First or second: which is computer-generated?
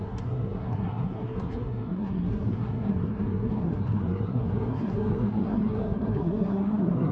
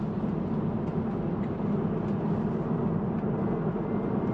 first